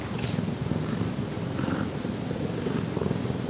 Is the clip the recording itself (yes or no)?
yes